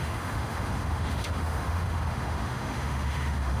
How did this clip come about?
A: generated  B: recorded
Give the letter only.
A